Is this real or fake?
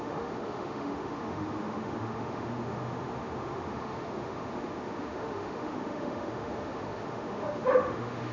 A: fake